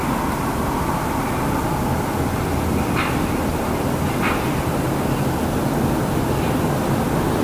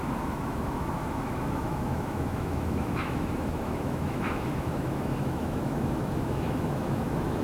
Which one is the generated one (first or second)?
second